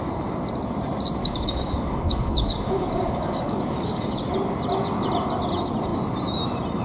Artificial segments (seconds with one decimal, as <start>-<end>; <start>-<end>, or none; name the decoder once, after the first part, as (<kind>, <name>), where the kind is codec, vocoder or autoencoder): 1.2-4.1 (codec, DAC)